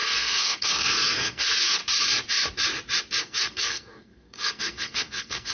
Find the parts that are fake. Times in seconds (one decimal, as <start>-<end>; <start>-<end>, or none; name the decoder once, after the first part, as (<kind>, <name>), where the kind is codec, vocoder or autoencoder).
0.0-1.8 (codec, SNAC); 3.2-5.5